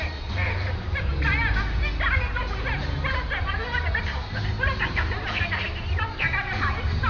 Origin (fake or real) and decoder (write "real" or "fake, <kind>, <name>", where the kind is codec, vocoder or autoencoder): real